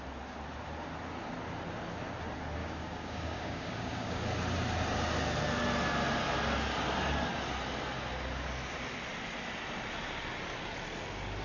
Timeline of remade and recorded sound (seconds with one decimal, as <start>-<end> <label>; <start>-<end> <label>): 0.0-2.6 recorded; 2.6-4.2 remade; 4.2-11.4 recorded